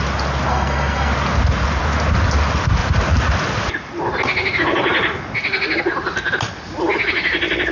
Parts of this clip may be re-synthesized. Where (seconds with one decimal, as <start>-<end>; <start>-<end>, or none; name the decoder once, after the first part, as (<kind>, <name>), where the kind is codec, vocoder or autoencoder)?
0.5-1.1 (codec, SNAC)